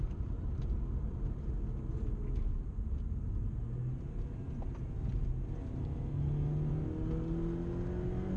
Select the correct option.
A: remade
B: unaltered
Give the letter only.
B